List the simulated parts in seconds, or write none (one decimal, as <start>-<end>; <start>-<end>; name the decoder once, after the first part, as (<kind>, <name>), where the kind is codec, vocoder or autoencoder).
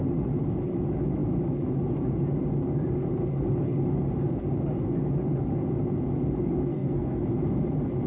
6.7-7.2 (codec, SNAC)